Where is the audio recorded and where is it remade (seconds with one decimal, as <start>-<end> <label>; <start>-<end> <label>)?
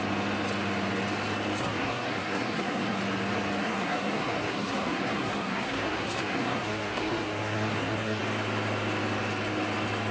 0.0-1.6 recorded; 1.6-3.0 remade; 3.0-3.6 recorded; 3.6-8.2 remade; 8.2-10.1 recorded